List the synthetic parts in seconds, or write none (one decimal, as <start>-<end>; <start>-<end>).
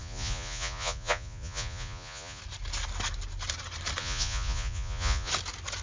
0.0-2.4; 4.0-5.3